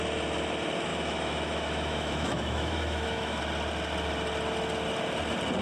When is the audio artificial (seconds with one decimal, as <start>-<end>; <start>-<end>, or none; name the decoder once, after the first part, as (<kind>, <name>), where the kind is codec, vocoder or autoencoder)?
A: 0.9-3.4 (autoencoder, DAC-VAE)